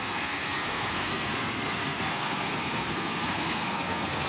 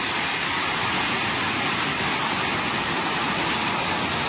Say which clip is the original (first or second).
second